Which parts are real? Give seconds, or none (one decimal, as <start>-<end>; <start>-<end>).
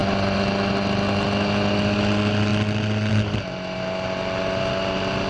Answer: 0.0-5.3